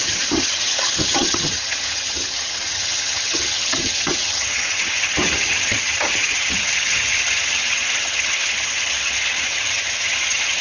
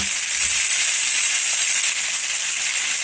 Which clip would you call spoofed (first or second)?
first